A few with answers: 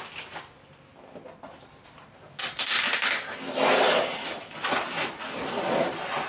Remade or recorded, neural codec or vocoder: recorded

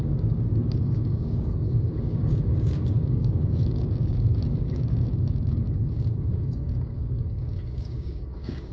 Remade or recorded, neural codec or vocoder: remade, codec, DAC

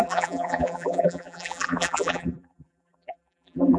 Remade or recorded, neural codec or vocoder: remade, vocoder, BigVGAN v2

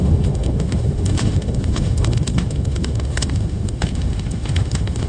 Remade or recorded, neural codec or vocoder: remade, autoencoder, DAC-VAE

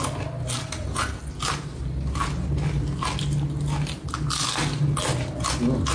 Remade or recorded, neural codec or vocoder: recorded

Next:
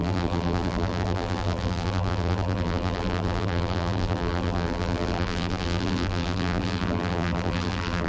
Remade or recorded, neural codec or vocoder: remade, vocoder, BigVGAN v2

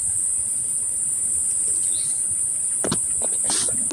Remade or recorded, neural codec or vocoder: recorded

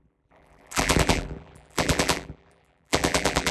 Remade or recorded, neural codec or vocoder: remade, vocoder, BigVGAN v2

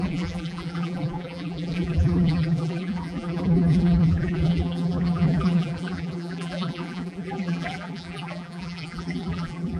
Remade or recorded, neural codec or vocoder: remade, vocoder, BigVGAN v2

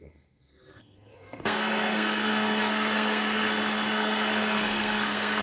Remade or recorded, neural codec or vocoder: remade, codec, SNAC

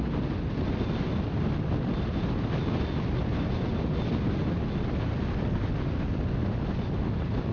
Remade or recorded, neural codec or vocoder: recorded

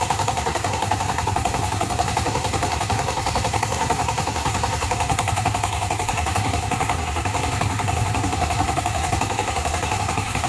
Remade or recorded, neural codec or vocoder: remade, codec, SNAC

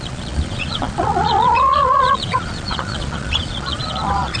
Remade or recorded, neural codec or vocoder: remade, vocoder, Vocos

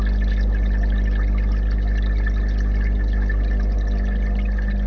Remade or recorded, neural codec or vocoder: recorded